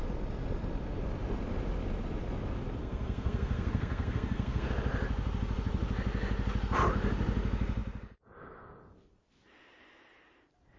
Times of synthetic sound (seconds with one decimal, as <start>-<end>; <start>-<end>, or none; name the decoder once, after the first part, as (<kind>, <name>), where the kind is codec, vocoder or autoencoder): 2.8-4.7 (codec, SNAC)

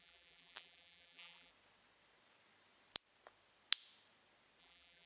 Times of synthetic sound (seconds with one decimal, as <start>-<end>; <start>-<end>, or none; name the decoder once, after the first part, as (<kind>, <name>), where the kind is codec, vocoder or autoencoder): 0.0-1.5 (vocoder, BigVGAN v2); 4.6-5.1

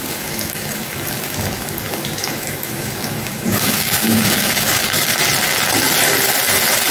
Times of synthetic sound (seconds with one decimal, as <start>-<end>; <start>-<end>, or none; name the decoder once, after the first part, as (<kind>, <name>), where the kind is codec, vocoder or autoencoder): 0.0-5.1 (codec, DAC)

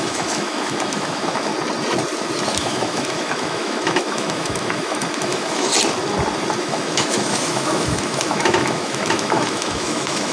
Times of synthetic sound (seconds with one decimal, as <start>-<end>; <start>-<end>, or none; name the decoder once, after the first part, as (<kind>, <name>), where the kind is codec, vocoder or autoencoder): 0.0-1.5 (autoencoder, DAC-VAE); 2.5-5.7; 6.6-10.3